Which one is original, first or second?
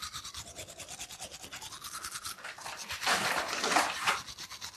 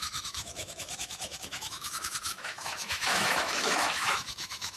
first